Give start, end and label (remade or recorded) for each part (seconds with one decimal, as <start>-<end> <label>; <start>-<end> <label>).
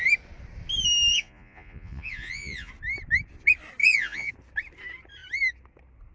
0.0-1.1 recorded; 1.1-2.7 remade; 2.7-3.8 recorded; 3.8-4.3 remade; 4.3-6.1 recorded